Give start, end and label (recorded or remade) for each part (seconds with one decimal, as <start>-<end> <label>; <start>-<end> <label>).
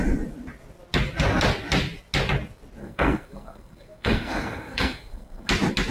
0.0-2.8 recorded; 2.8-5.5 remade; 5.5-5.9 recorded